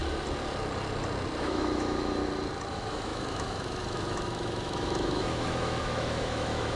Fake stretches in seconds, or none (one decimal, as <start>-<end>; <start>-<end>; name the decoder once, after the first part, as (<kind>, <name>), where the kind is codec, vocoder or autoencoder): 1.4-2.2 (autoencoder, DAC-VAE); 2.7-6.8